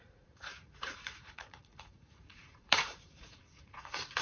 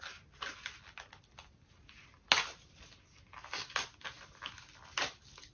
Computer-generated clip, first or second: first